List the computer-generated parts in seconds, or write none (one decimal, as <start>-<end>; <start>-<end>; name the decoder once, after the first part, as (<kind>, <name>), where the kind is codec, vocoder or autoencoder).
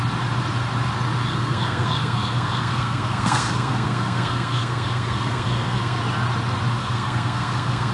1.3-6.0 (codec, SNAC); 6.8-7.9